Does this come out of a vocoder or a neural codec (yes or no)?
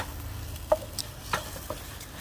no